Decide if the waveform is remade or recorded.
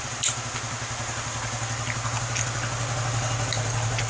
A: recorded